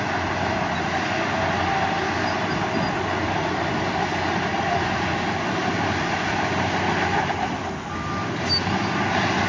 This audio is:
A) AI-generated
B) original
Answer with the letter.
B